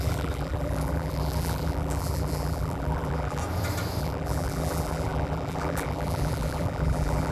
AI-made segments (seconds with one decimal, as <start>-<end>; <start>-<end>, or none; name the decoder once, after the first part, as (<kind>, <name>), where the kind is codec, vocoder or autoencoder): 0.0-3.4 (vocoder, BigVGAN v2); 4.0-7.3